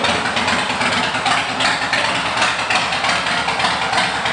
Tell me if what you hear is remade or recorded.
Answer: recorded